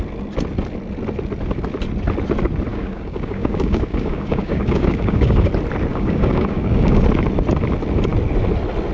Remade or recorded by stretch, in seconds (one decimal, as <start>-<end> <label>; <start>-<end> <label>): 0.0-2.7 recorded; 2.7-5.5 remade; 5.5-5.9 recorded; 5.9-7.0 remade; 7.0-8.9 recorded